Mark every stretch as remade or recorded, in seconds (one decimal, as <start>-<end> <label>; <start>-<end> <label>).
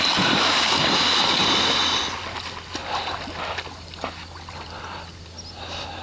0.0-6.0 recorded